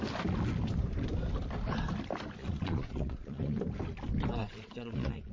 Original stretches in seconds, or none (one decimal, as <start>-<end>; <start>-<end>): 0.0-2.4; 3.6-4.4